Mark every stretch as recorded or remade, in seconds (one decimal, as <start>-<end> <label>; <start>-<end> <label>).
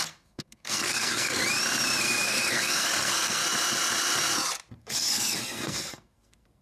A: 0.0-1.4 remade; 1.4-2.0 recorded; 2.0-3.4 remade; 3.4-4.7 recorded; 4.7-6.6 remade